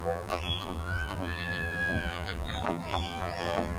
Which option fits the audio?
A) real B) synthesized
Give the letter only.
B